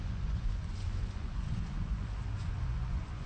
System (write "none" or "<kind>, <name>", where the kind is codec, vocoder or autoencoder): vocoder, Vocos